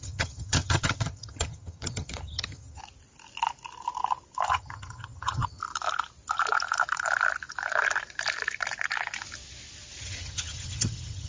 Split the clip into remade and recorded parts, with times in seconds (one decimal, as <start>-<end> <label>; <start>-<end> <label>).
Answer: 0.0-2.8 remade; 2.8-4.5 recorded; 4.5-5.6 remade; 5.6-10.0 recorded; 10.0-11.3 remade